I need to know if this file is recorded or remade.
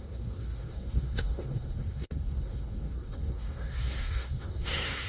remade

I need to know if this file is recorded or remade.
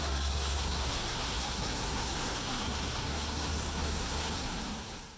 remade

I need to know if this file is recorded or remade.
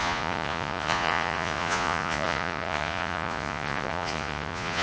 remade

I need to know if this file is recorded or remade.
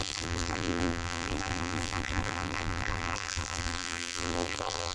remade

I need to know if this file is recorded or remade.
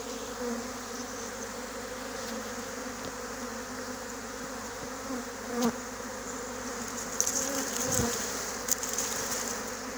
recorded